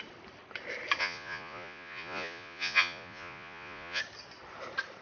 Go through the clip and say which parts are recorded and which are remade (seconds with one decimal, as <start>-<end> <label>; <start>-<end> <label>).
0.0-1.0 recorded; 1.0-4.0 remade; 4.0-5.0 recorded

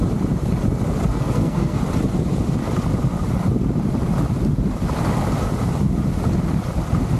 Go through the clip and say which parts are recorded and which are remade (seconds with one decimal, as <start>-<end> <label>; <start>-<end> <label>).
0.0-1.1 recorded; 1.1-1.8 remade; 1.8-7.2 recorded

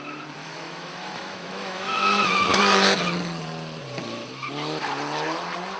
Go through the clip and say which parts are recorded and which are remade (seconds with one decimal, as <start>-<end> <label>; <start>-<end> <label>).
0.0-0.4 recorded; 0.4-2.6 remade; 2.6-5.8 recorded

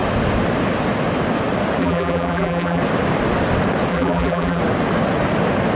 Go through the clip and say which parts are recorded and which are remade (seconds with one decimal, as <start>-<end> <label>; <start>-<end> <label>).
0.0-1.8 recorded; 1.8-2.8 remade; 2.8-3.9 recorded; 3.9-4.6 remade; 4.6-5.7 recorded